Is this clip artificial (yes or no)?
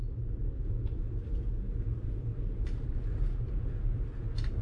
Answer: no